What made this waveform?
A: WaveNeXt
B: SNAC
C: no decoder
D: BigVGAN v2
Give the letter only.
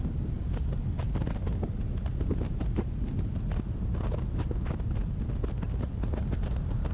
C